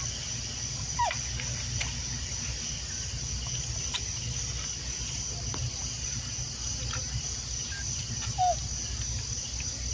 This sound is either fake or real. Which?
real